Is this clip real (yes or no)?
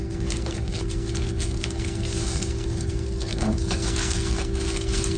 no